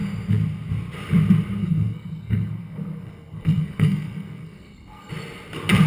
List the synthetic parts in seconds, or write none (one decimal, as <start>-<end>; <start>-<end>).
1.6-5.1